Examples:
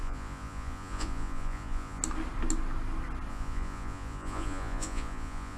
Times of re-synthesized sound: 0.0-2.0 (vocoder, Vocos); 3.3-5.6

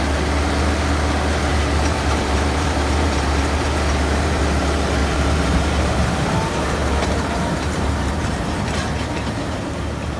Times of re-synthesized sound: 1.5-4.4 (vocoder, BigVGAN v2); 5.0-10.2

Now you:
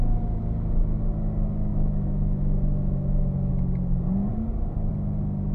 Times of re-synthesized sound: 1.7-3.5 (autoencoder, DAC-VAE)

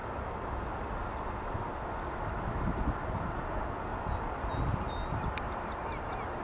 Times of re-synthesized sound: none

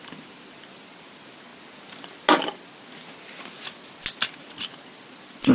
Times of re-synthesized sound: none

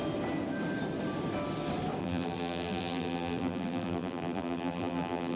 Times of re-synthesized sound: 2.0-5.4 (vocoder, BigVGAN v2)